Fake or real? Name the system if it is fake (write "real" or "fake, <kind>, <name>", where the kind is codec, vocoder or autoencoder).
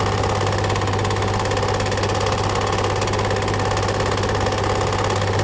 real